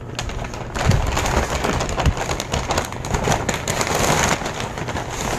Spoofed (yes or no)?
no